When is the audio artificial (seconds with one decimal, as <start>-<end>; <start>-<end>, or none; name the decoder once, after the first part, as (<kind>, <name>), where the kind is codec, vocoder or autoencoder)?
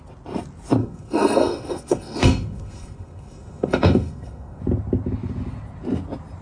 0.8-4.6 (codec, SNAC)